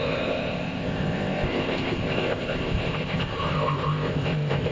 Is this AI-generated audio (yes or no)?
yes